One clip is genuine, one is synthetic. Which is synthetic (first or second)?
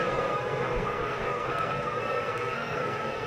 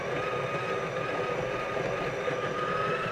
first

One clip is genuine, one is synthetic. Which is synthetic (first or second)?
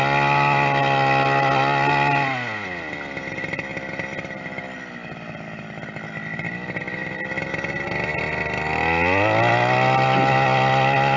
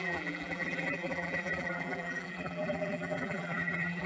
second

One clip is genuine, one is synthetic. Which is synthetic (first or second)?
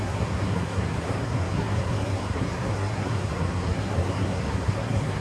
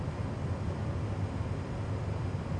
first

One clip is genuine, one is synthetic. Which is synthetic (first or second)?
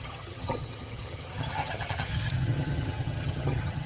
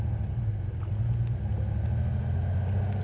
first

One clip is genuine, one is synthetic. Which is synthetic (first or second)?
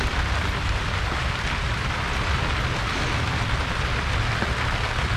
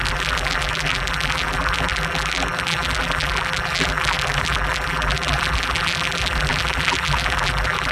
second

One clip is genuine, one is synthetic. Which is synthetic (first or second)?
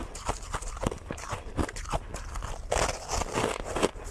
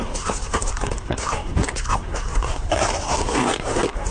second